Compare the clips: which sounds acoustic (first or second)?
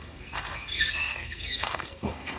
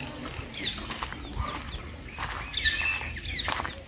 second